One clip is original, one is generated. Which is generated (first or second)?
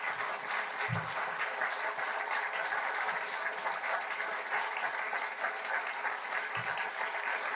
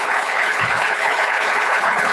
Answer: second